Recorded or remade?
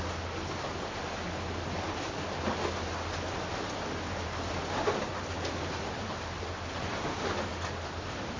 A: recorded